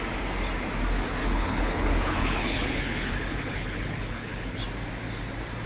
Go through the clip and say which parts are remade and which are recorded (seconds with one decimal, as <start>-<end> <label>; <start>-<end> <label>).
0.0-1.2 recorded; 1.2-4.6 remade; 4.6-5.7 recorded